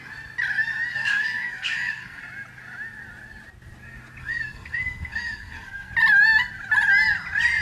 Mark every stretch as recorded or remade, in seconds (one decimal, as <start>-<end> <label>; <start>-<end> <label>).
0.0-0.9 recorded; 0.9-2.2 remade; 2.2-4.2 recorded; 4.2-5.9 remade; 5.9-7.6 recorded